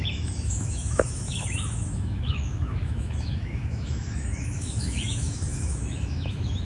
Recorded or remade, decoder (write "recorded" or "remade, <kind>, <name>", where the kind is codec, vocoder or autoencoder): remade, autoencoder, DAC-VAE